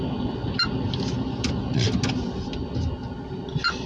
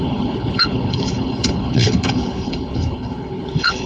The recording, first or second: first